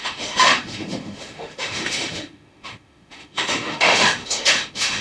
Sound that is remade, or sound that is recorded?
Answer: remade